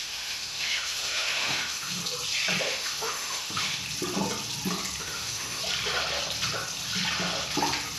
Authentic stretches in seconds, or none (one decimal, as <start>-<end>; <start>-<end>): 2.0-2.6; 3.8-5.0; 5.6-8.0